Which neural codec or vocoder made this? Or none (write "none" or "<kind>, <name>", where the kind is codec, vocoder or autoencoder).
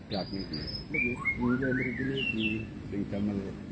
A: none